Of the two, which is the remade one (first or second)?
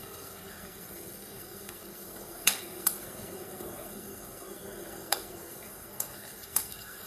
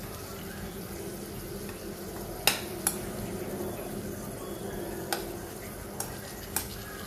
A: first